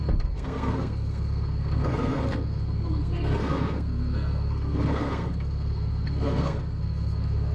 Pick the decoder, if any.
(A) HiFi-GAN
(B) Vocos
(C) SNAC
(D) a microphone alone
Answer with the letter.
C